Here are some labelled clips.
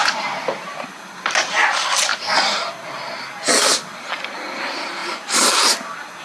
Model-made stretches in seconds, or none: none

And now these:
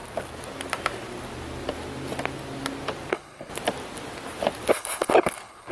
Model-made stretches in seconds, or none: 3.1-3.5 (codec, HILCodec); 4.7-5.7